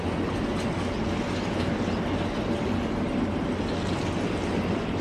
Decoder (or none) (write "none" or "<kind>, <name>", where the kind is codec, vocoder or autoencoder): none